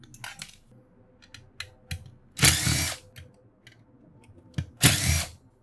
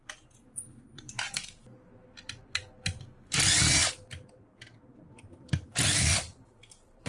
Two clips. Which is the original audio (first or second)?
first